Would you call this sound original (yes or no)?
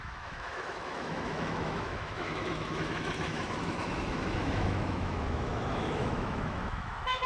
no